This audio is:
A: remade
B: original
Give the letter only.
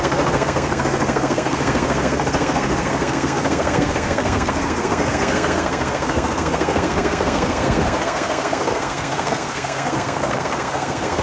A